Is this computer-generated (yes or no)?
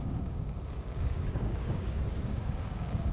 yes